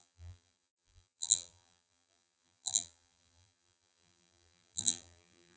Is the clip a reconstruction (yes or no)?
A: yes